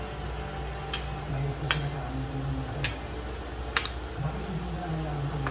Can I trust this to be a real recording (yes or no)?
yes